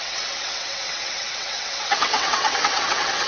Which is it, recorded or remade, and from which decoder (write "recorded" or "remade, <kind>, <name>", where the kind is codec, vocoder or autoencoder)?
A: remade, vocoder, WaveNeXt